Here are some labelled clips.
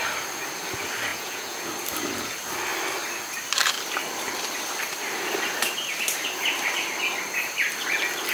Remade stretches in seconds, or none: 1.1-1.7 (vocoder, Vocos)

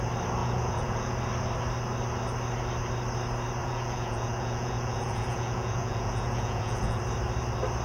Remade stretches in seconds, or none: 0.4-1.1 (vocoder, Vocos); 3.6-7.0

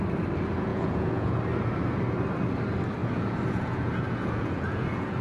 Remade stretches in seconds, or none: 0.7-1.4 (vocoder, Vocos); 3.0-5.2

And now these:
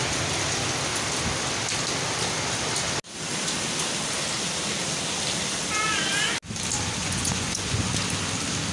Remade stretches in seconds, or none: 7.0-7.9 (vocoder, Vocos)

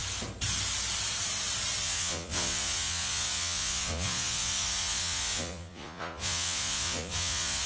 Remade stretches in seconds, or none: 1.8-7.7 (vocoder, Vocos)